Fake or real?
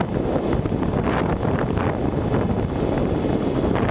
real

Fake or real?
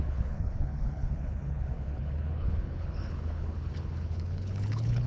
fake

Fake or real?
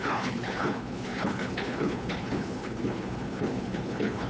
fake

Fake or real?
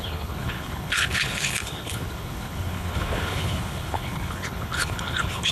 fake